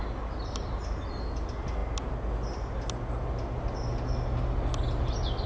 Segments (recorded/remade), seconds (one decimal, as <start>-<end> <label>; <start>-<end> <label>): 0.0-5.5 recorded